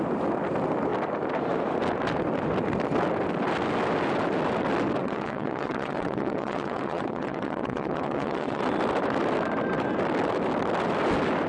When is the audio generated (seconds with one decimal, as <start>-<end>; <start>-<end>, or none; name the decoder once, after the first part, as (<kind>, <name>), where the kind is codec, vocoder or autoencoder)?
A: 5.0-8.6 (vocoder, WaveNeXt)